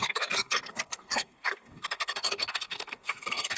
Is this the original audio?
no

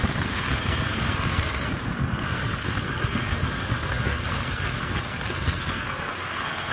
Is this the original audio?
no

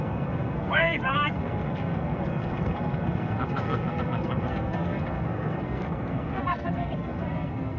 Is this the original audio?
no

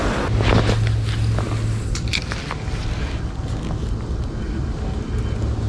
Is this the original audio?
yes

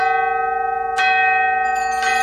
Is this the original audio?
yes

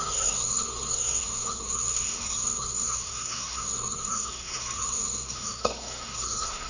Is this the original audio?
no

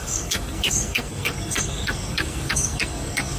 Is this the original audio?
no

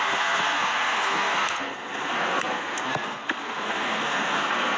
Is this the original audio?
no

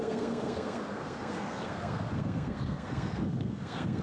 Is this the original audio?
no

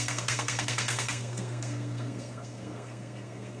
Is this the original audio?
no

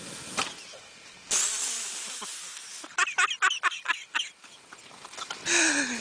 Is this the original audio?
yes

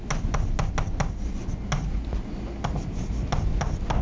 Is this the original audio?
yes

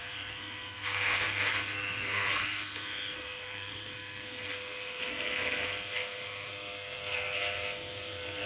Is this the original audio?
no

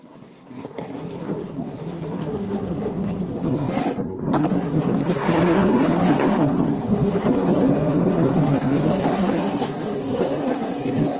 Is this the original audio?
no